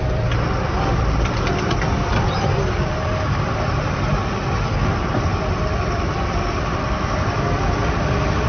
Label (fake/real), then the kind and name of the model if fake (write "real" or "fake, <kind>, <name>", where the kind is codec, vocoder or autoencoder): fake, vocoder, BigVGAN v2